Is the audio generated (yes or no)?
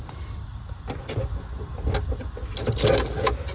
no